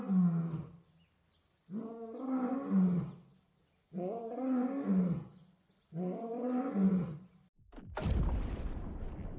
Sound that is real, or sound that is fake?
real